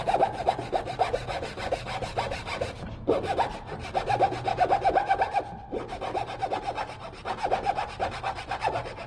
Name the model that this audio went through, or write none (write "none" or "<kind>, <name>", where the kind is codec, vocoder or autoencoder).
none